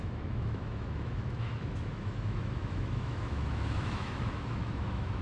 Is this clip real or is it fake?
fake